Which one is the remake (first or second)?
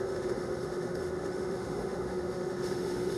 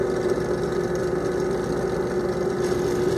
first